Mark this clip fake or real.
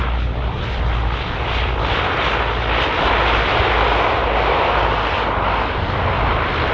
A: real